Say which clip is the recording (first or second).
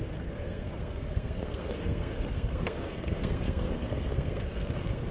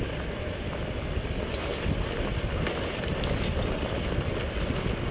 second